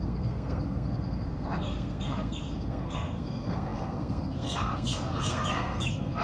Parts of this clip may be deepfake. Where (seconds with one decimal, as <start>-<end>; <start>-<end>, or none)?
0.0-6.2